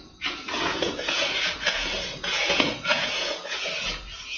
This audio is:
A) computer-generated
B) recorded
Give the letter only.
A